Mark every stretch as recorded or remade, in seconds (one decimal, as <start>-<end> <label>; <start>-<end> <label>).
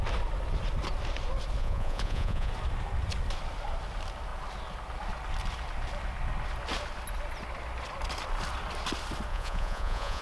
0.0-1.6 recorded; 1.6-2.5 remade; 2.5-9.3 recorded; 9.3-10.2 remade